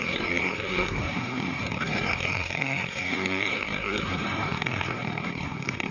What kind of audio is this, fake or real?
fake